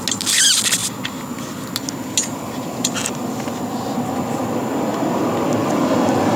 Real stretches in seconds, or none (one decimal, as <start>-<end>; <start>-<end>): 0.0-6.4